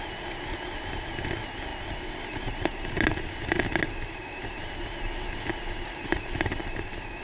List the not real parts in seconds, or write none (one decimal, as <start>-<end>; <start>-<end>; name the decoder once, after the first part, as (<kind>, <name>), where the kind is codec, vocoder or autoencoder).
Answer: none